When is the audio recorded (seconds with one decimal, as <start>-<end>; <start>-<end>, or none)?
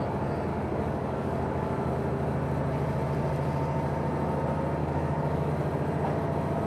0.0-0.5; 1.9-4.8; 5.5-6.7